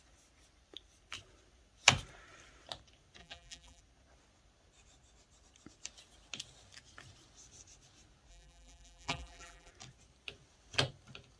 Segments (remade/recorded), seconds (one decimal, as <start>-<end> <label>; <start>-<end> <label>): 0.0-3.2 recorded; 3.2-3.8 remade; 3.8-8.3 recorded; 8.3-9.7 remade; 9.7-11.4 recorded